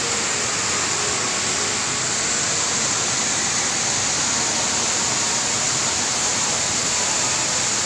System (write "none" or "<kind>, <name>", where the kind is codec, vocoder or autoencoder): none